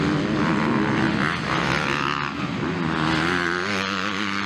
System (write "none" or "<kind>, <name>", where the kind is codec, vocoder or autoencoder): none